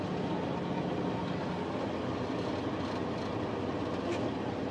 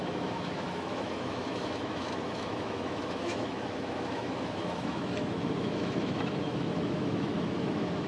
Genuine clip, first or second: first